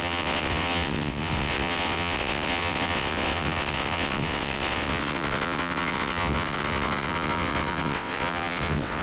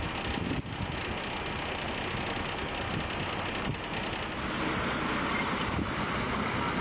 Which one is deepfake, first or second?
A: first